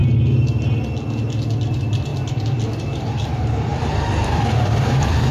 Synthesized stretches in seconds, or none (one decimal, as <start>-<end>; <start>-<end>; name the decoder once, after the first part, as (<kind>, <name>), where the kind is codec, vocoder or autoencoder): 1.6-5.3 (vocoder, BigVGAN v2)